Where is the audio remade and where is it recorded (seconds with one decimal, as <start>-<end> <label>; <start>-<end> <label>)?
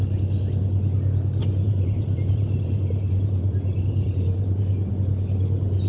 0.0-1.4 recorded; 1.4-4.9 remade; 4.9-5.9 recorded